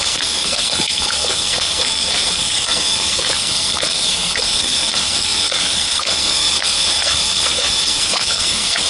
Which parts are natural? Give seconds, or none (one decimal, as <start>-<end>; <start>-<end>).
none